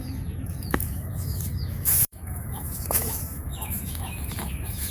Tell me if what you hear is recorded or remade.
remade